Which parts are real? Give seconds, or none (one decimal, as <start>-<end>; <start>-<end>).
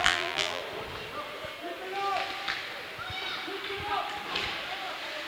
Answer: 0.6-5.3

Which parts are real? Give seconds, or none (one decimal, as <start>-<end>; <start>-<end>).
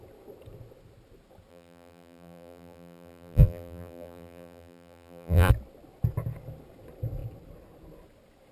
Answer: 0.0-1.5; 5.5-8.5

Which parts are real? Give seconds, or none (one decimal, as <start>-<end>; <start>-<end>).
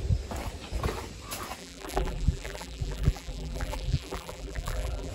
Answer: 0.0-1.6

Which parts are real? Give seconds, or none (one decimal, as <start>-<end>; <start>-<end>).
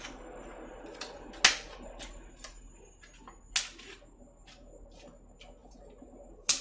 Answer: 0.0-5.6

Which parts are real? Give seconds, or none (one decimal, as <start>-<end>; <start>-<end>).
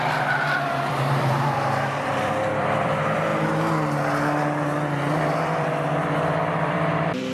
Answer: 3.3-5.4